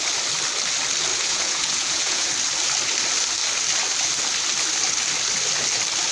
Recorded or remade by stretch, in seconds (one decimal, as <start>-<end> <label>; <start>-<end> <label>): 0.0-1.1 recorded; 1.1-2.3 remade; 2.3-6.1 recorded